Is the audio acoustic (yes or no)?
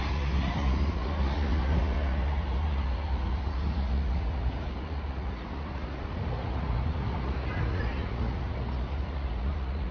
no